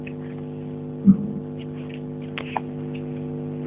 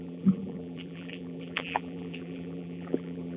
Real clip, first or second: first